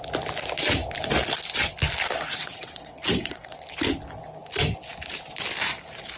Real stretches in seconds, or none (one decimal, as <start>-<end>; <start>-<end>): 0.0-2.4; 3.6-6.2